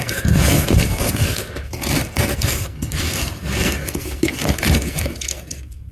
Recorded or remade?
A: remade